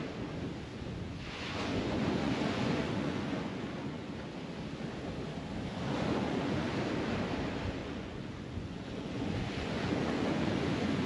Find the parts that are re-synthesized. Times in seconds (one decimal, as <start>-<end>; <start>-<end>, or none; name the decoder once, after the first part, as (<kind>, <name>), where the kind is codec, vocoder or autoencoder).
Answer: 0.7-4.1 (vocoder, Vocos); 5.7-6.7; 7.8-11.1